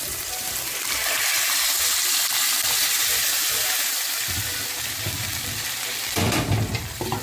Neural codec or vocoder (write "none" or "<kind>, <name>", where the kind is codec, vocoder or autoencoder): vocoder, BigVGAN v2